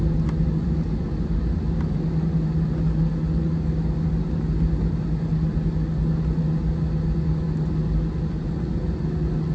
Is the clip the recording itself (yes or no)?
yes